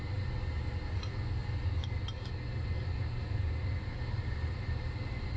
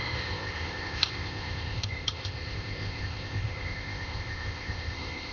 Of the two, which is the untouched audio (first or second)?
first